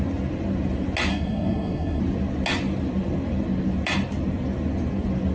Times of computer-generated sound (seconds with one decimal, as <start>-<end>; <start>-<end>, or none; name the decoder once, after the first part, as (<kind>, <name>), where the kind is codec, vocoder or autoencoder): 1.1-2.0 (codec, SNAC)